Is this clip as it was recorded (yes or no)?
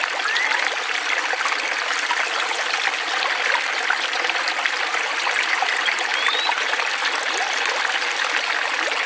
yes